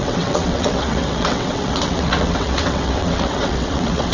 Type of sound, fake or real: fake